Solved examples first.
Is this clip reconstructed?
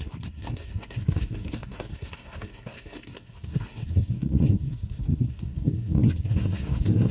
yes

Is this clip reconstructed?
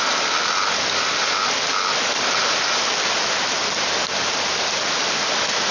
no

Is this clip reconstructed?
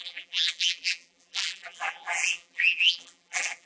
yes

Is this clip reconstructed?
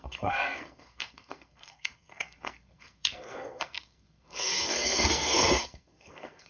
yes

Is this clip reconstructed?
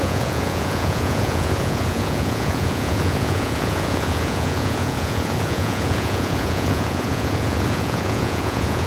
yes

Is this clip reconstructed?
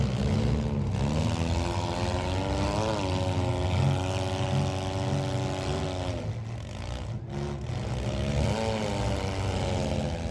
no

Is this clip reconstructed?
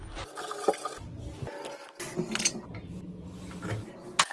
no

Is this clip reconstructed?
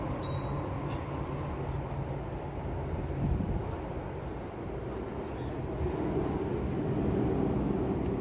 no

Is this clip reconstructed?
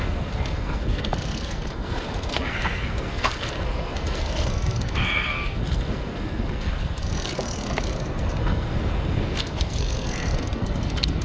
yes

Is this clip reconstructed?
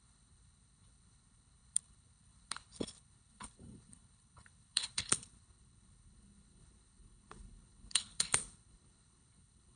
yes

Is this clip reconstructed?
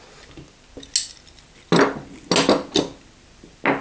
no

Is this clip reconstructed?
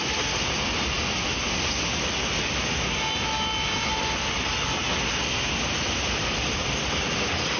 no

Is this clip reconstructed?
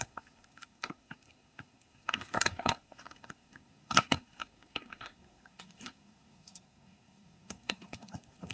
yes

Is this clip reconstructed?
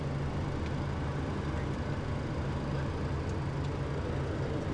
no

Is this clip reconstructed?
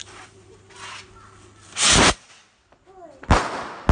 no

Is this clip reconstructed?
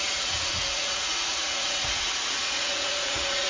yes